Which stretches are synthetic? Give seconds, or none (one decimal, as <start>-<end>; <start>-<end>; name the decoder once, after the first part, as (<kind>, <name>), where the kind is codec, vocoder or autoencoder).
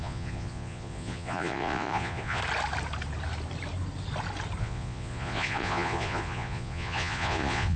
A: 0.0-2.4 (vocoder, Vocos); 4.6-7.8